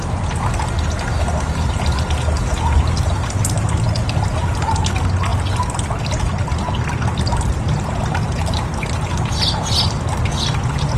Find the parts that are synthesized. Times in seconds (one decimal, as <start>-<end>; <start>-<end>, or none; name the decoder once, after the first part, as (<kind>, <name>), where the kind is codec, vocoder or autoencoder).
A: none